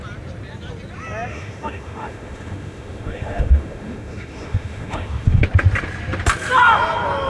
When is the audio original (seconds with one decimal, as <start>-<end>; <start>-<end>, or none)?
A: 0.0-1.3; 5.4-7.3